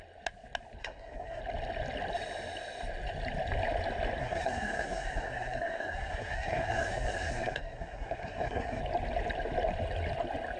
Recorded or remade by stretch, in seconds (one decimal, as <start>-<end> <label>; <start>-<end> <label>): 0.0-0.8 recorded; 0.8-1.4 remade; 1.4-4.2 recorded; 4.2-8.8 remade; 8.8-10.6 recorded